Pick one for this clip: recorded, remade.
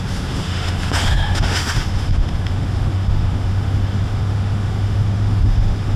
remade